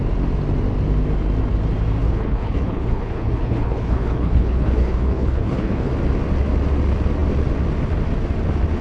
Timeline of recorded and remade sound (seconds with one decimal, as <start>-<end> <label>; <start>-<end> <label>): 0.0-2.0 recorded; 2.0-5.9 remade; 5.9-8.8 recorded